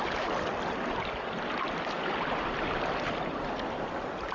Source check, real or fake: real